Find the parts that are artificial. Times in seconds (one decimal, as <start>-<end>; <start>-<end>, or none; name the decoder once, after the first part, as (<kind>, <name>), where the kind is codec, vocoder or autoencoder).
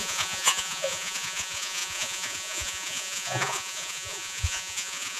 0.0-5.2 (vocoder, Vocos)